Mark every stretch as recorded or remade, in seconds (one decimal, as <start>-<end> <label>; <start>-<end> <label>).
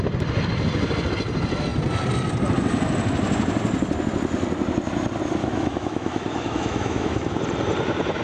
0.0-5.4 recorded; 5.4-7.4 remade; 7.4-8.2 recorded